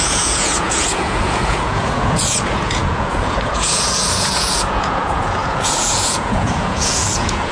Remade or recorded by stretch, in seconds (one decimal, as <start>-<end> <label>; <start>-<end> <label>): 0.0-7.5 remade